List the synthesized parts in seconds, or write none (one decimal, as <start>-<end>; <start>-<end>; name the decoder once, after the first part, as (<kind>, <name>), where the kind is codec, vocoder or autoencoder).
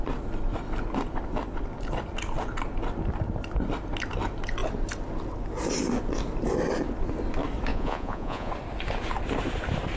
7.7-8.5 (vocoder, Vocos)